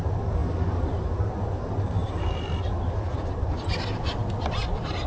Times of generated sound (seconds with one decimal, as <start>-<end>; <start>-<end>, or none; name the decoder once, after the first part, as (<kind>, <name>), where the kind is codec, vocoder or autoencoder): none